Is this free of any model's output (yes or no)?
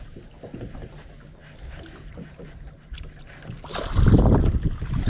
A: yes